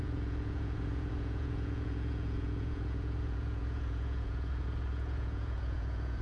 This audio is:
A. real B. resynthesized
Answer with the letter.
B